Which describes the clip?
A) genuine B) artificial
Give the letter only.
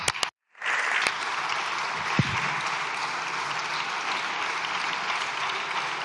A